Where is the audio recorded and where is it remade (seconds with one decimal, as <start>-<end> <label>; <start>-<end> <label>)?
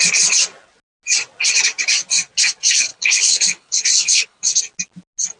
0.0-2.9 recorded; 2.9-4.6 remade; 4.6-5.4 recorded